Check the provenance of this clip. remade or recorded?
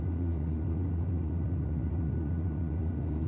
remade